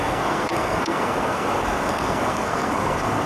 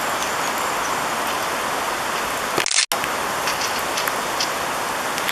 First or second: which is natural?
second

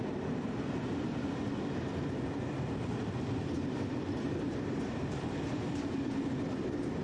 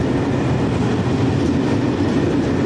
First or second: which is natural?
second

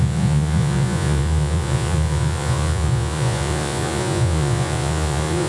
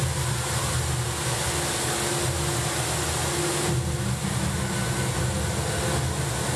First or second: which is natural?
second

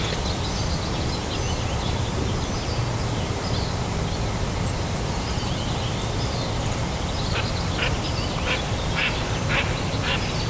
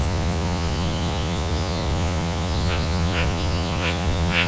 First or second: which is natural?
first